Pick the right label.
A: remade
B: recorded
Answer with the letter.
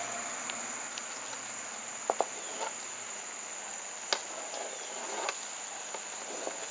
B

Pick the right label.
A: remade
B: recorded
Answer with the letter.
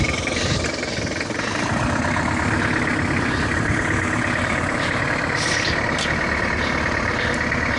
B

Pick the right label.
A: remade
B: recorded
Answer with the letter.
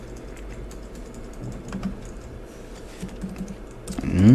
B